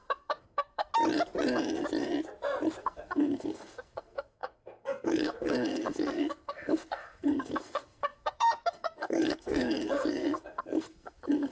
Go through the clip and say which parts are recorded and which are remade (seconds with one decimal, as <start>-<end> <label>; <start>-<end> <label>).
0.0-0.9 remade; 0.9-2.8 recorded; 2.8-11.5 remade